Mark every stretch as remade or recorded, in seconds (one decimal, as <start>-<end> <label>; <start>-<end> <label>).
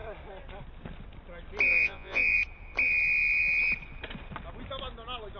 0.0-1.7 recorded; 1.7-2.4 remade; 2.4-5.4 recorded